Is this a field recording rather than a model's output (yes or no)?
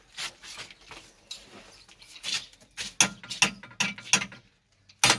yes